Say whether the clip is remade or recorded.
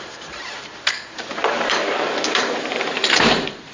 remade